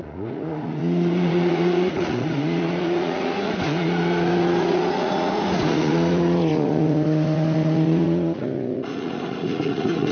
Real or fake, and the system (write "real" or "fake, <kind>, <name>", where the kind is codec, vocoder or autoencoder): fake, vocoder, Vocos